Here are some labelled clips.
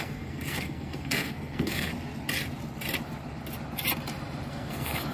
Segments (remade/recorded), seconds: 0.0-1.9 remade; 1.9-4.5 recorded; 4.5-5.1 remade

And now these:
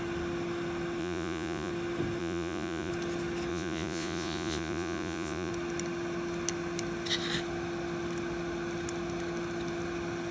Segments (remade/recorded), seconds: 0.0-1.0 recorded; 1.0-1.7 remade; 1.7-2.2 recorded; 2.2-2.9 remade; 2.9-3.5 recorded; 3.5-5.5 remade; 5.5-10.3 recorded

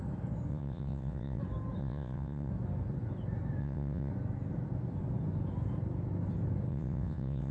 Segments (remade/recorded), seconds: 0.0-0.5 recorded; 0.5-1.4 remade; 1.4-1.8 recorded; 1.8-2.5 remade; 2.5-3.6 recorded; 3.6-4.1 remade; 4.1-6.7 recorded; 6.7-7.5 remade

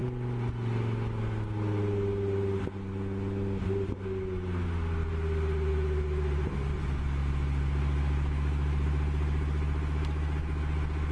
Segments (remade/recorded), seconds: 0.0-11.1 recorded

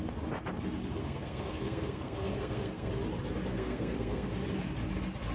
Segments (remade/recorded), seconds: 0.0-1.0 recorded; 1.0-2.9 remade; 2.9-3.5 recorded; 3.5-4.3 remade; 4.3-5.3 recorded

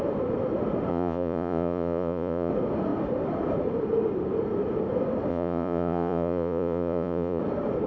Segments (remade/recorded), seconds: 0.0-0.9 recorded; 0.9-2.5 remade; 2.5-5.3 recorded; 5.3-7.4 remade; 7.4-7.9 recorded

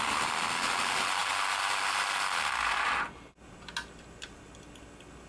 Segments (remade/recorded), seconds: 0.0-5.3 recorded

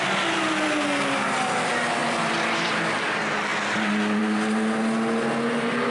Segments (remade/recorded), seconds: 0.0-2.0 recorded; 2.0-2.8 remade; 2.8-5.9 recorded